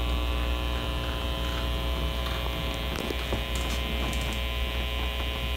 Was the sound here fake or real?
real